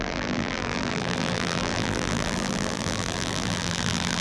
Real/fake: fake